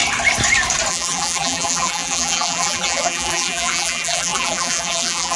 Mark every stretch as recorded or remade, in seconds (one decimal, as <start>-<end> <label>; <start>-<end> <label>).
0.0-0.9 recorded; 0.9-5.4 remade